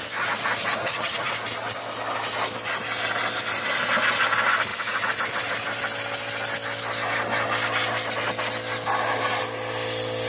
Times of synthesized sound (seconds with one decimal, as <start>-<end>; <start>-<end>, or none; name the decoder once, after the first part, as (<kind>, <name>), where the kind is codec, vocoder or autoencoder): 0.8-1.3 (vocoder, HiFi-GAN)